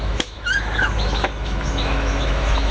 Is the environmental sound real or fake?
fake